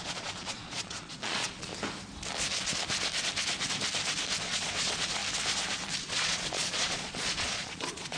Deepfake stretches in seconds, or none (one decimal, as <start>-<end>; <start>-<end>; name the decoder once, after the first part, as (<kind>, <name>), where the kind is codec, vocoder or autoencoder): 0.0-1.7 (vocoder, Vocos); 4.4-5.2; 6.0-8.2